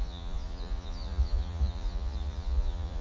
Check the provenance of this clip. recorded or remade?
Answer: remade